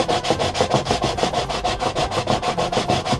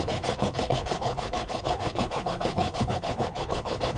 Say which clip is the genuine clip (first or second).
first